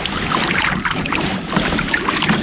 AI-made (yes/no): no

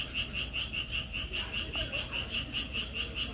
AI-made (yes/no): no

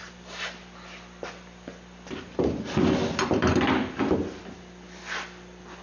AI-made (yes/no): no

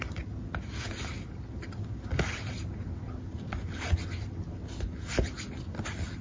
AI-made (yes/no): no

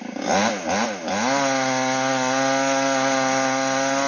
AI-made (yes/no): no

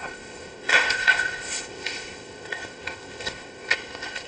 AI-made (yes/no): yes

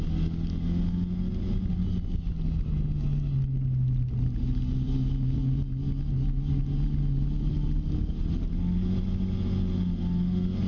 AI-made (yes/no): no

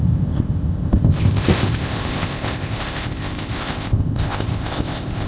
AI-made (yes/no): yes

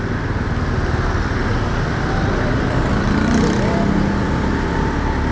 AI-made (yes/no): no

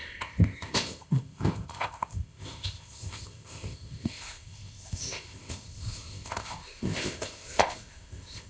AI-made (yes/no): yes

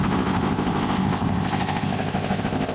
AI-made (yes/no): yes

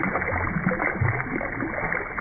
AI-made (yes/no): no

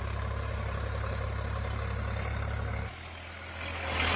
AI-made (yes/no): no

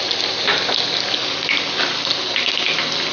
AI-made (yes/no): no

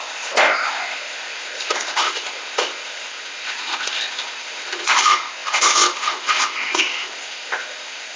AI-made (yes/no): yes